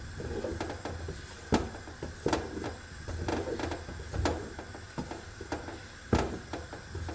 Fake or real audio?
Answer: real